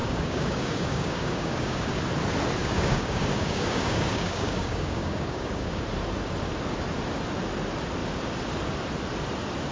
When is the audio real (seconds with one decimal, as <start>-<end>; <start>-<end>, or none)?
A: 2.0-2.6; 5.8-9.7